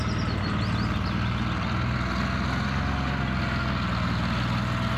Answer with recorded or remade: recorded